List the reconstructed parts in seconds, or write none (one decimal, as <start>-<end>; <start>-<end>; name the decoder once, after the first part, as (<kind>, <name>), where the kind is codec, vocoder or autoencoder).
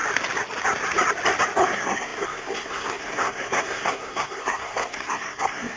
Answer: 1.6-5.8 (codec, SNAC)